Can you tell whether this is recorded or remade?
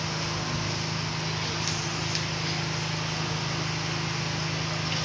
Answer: recorded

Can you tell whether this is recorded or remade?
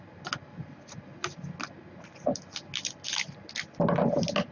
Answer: recorded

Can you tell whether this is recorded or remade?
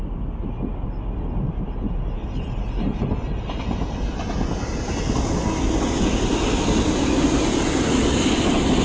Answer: recorded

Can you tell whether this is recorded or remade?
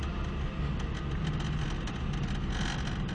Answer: recorded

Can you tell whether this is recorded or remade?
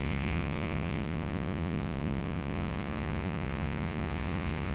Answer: remade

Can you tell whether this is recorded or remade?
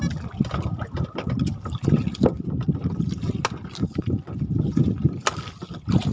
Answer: recorded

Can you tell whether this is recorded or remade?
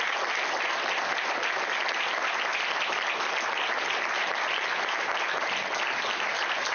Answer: recorded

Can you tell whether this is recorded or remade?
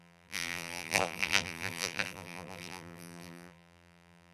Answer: remade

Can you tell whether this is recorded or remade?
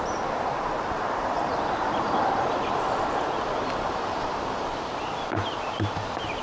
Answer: remade